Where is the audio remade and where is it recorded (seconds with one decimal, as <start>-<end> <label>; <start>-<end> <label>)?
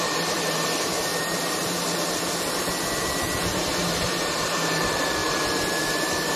0.0-5.2 remade; 5.2-5.8 recorded; 5.8-6.4 remade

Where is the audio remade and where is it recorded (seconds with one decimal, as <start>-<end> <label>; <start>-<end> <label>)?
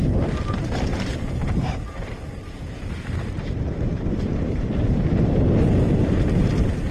0.0-0.9 recorded; 0.9-5.0 remade; 5.0-6.0 recorded; 6.0-6.9 remade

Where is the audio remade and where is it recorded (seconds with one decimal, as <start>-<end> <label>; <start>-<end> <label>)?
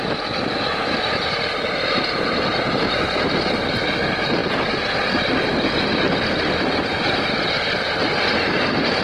0.0-9.0 recorded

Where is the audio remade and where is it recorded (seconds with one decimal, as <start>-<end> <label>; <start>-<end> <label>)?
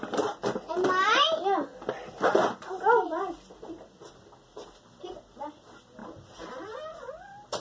0.0-4.5 recorded; 4.5-5.5 remade; 5.5-6.0 recorded; 6.0-7.1 remade; 7.1-7.6 recorded